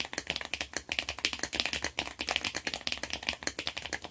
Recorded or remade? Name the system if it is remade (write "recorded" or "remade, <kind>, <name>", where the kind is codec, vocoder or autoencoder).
recorded